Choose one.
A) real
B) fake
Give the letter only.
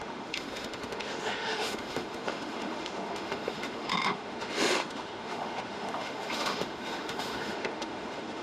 B